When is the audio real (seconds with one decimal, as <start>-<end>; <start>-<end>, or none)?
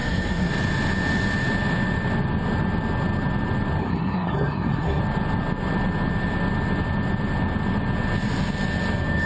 0.5-3.8; 5.0-9.3